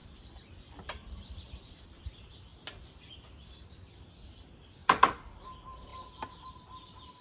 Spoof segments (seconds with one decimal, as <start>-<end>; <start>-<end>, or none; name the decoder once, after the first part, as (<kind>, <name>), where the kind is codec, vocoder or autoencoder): 0.0-2.0 (vocoder, BigVGAN v2); 4.8-5.4